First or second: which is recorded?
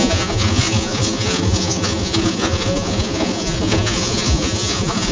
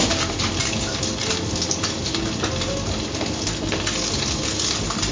second